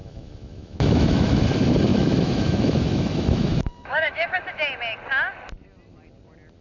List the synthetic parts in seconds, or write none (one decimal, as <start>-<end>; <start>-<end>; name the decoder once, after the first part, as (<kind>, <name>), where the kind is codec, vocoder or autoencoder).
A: 0.0-1.4 (autoencoder, DAC-VAE); 1.9-4.4